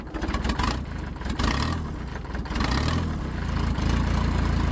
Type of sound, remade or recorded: recorded